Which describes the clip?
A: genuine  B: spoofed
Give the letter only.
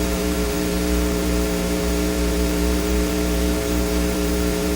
B